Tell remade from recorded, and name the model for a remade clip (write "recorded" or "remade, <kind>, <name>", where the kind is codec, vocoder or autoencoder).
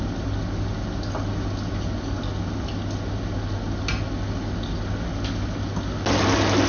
recorded